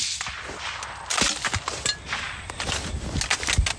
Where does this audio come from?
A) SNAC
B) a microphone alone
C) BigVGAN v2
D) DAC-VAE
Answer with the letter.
B